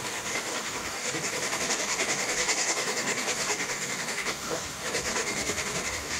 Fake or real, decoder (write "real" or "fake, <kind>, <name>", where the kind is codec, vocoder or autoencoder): fake, codec, DAC